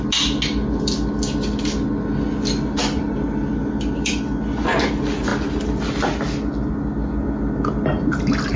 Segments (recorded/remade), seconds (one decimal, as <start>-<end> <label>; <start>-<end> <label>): 0.0-8.6 recorded